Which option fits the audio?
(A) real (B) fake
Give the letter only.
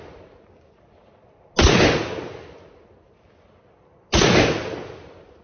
A